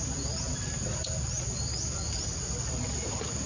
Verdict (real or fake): real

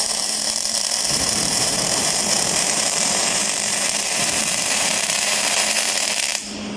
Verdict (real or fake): fake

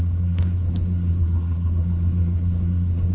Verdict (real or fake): fake